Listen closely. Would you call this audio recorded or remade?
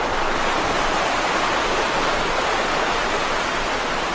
recorded